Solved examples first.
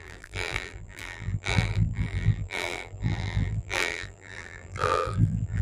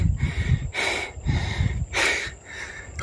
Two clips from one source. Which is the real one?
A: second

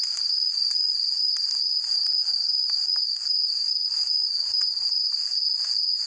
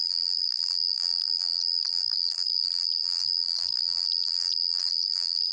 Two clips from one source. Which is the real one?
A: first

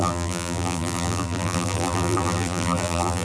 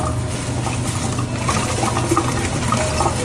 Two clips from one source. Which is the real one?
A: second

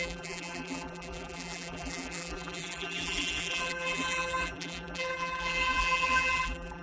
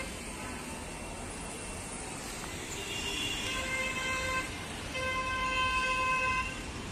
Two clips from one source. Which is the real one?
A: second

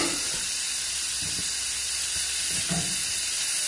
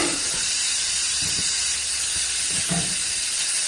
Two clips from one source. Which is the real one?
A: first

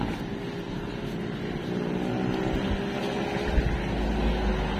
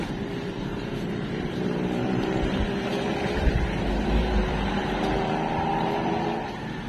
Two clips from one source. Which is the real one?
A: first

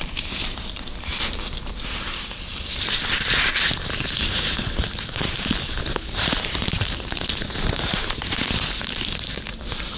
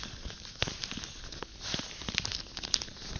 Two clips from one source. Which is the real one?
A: second